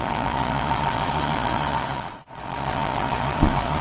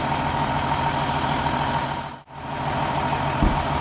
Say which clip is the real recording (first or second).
second